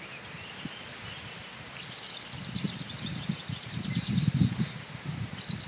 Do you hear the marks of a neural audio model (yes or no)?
no